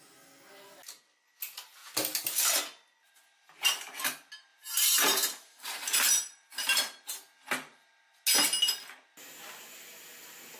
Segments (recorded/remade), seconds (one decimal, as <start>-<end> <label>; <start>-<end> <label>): 0.0-4.5 recorded; 4.5-6.8 remade; 6.8-10.6 recorded